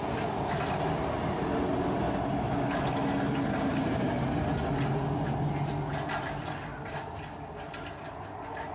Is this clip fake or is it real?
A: real